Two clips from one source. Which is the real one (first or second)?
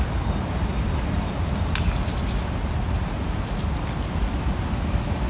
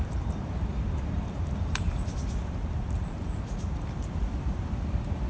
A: first